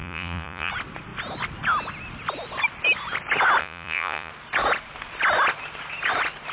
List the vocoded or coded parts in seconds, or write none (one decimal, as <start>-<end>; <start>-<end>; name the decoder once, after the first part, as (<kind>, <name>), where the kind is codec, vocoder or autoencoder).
0.0-0.7 (vocoder, Vocos); 3.6-4.3